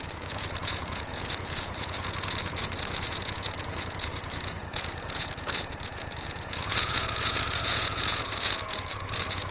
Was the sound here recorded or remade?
remade